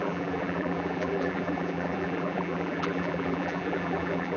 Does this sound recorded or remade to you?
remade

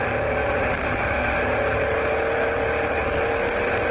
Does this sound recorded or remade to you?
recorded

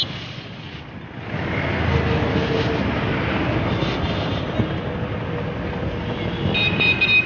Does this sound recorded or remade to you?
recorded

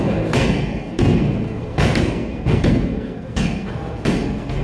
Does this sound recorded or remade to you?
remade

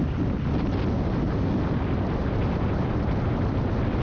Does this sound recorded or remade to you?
recorded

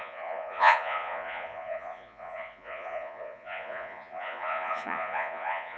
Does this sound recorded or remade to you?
remade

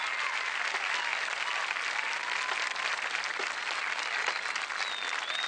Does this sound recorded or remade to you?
recorded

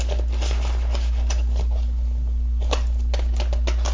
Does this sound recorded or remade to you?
recorded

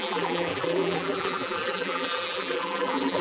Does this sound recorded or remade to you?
remade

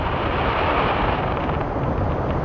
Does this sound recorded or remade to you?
remade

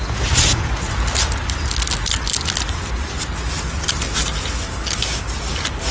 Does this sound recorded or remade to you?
recorded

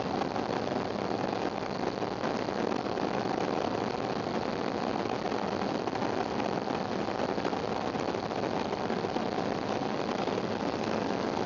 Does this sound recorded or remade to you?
recorded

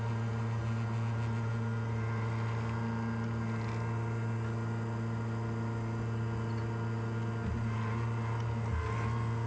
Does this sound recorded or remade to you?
recorded